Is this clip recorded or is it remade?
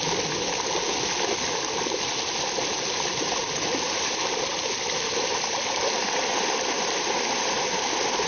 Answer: recorded